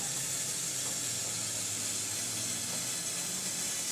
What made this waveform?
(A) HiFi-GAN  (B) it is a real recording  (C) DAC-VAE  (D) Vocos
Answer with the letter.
B